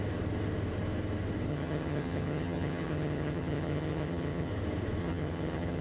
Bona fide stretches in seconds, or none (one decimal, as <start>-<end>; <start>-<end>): 0.0-1.5; 4.5-5.0